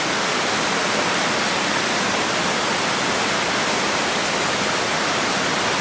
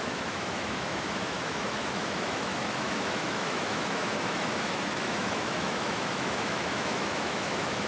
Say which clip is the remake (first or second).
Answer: second